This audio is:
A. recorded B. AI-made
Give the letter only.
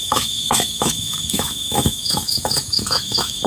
B